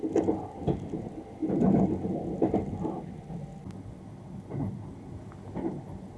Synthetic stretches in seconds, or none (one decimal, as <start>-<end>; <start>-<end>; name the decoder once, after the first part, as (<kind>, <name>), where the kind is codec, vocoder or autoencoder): none